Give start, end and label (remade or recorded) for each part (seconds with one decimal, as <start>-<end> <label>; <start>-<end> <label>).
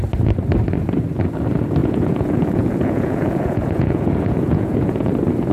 0.0-1.8 recorded; 1.8-5.1 remade; 5.1-5.5 recorded